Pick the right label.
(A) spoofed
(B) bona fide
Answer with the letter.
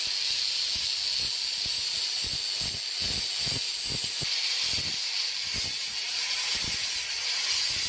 B